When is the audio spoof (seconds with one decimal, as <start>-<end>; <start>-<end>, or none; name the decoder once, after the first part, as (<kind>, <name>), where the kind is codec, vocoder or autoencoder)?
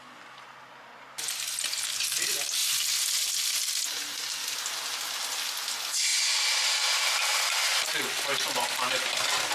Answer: none